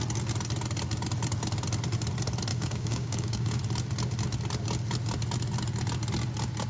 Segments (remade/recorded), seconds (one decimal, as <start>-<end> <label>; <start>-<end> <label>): 0.0-2.5 recorded; 2.5-3.6 remade; 3.6-6.7 recorded